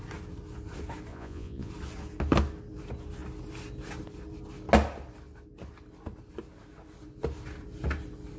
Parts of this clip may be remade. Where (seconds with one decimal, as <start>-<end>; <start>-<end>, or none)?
1.1-1.7